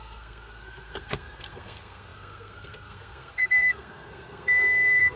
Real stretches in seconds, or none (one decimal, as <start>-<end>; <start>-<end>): none